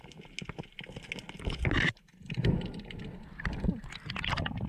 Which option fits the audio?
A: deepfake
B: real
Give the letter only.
B